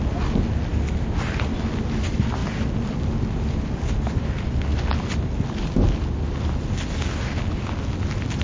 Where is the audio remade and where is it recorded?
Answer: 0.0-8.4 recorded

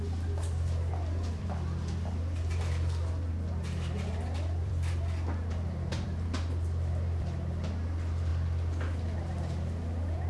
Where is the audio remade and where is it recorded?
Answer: 0.0-8.3 remade; 8.3-10.3 recorded

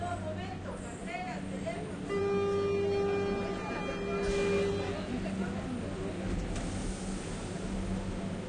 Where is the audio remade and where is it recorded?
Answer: 0.0-8.5 recorded